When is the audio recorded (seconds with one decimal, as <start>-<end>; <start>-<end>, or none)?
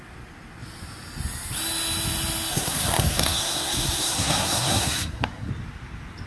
0.0-2.5; 5.5-6.3